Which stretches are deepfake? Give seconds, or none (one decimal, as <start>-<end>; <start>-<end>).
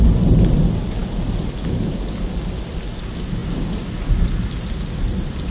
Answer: none